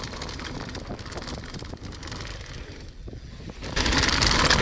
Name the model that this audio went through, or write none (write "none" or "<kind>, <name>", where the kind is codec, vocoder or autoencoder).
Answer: none